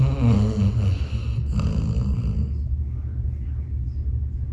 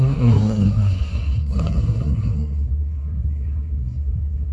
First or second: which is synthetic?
second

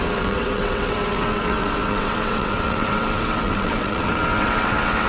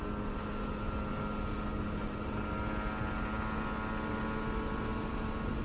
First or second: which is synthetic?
first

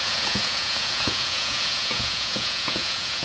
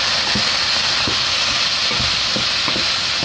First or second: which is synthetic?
first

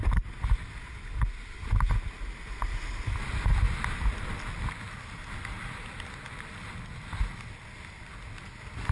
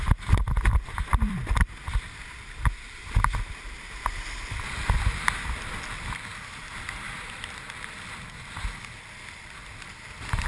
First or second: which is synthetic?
second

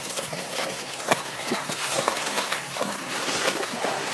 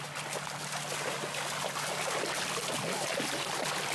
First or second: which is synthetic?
first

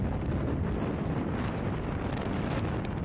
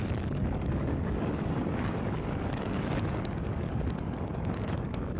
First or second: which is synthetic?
second